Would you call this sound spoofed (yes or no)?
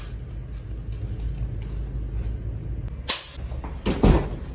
no